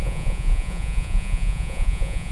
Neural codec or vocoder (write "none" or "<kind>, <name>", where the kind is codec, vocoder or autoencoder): vocoder, Vocos